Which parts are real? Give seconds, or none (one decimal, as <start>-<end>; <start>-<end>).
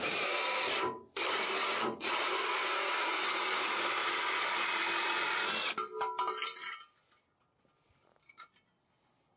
0.0-9.4